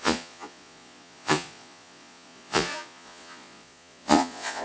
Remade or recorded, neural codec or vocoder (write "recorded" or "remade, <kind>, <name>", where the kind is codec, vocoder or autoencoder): remade, vocoder, Vocos